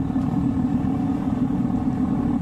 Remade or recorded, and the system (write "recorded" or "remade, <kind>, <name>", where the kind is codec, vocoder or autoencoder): recorded